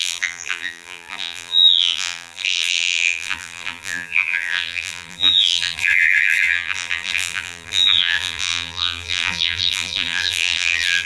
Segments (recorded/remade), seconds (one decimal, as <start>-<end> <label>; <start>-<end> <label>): 0.0-11.1 remade